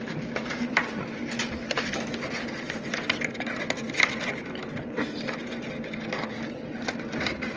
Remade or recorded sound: recorded